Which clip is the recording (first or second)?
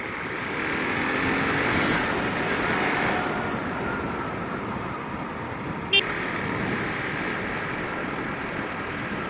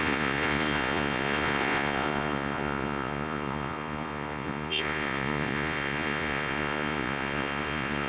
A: first